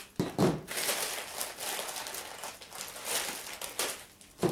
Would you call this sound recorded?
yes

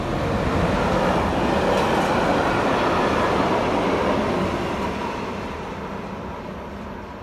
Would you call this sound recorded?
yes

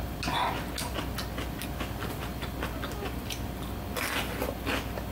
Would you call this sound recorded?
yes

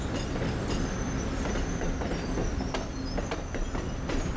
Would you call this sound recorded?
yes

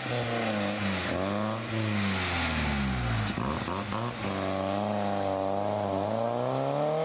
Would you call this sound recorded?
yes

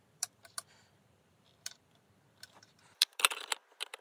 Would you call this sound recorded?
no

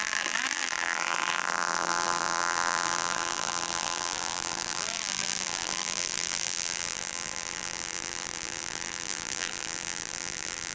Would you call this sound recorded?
no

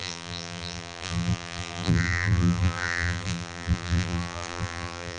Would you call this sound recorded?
no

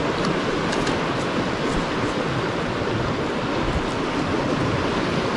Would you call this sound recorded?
yes